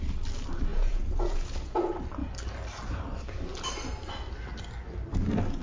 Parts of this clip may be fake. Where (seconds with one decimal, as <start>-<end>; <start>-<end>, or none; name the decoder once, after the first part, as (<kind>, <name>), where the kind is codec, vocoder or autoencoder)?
0.7-1.8 (vocoder, Vocos)